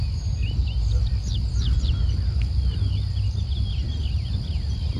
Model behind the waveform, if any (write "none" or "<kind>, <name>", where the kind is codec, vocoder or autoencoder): none